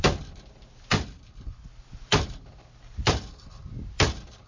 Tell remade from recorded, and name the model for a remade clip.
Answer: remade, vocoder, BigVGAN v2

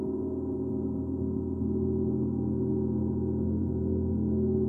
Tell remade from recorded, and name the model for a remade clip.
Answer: recorded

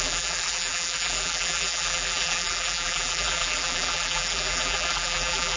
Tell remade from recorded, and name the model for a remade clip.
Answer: remade, vocoder, BigVGAN v2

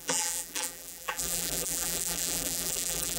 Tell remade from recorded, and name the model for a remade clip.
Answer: remade, vocoder, BigVGAN v2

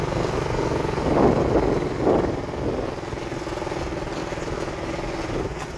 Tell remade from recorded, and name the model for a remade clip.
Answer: recorded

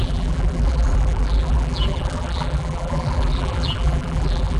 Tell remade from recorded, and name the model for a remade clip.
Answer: remade, vocoder, BigVGAN v2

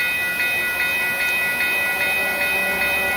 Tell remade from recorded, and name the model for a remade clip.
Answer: recorded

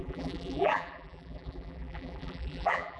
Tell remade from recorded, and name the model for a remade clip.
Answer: remade, vocoder, BigVGAN v2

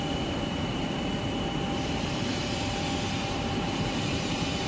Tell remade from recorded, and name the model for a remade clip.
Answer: remade, vocoder, BigVGAN v2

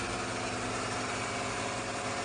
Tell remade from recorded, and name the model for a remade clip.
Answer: recorded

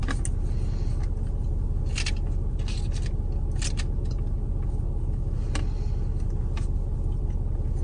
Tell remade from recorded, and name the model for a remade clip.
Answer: recorded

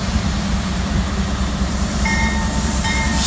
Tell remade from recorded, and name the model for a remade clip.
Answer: remade, vocoder, BigVGAN v2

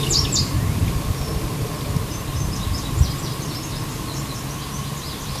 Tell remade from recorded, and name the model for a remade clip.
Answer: remade, vocoder, BigVGAN v2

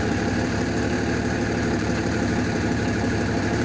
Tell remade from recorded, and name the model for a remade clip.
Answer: remade, vocoder, BigVGAN v2